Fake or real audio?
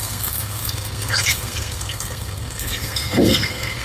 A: fake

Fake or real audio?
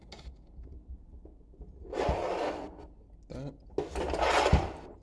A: real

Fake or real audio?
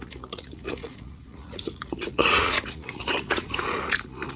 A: fake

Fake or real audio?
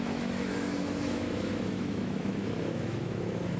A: fake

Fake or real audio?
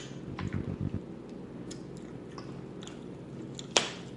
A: real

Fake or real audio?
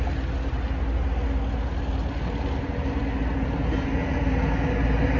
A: real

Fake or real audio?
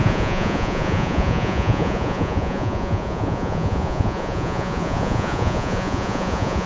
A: fake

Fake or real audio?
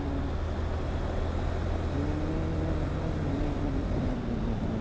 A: real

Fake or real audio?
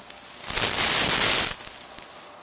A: real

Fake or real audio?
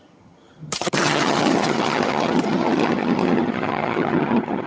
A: fake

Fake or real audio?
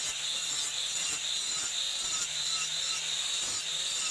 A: real